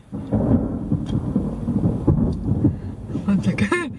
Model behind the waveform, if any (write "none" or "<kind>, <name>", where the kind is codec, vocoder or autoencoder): none